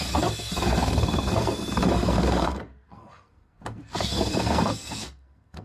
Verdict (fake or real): fake